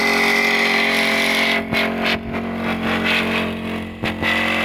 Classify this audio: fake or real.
real